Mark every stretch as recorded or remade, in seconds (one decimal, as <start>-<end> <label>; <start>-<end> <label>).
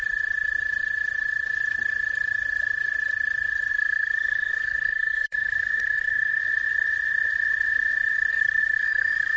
0.0-3.7 recorded; 3.7-6.4 remade; 6.4-8.3 recorded; 8.3-9.4 remade